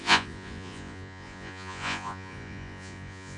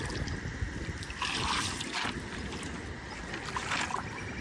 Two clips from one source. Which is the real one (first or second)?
second